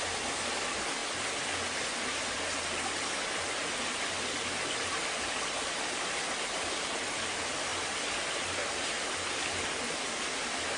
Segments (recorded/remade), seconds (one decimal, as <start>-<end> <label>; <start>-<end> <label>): 0.0-10.8 recorded